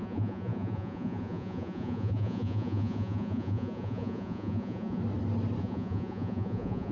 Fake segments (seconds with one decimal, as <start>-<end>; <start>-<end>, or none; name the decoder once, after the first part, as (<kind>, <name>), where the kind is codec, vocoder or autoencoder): 0.0-5.0 (vocoder, Vocos); 5.6-6.9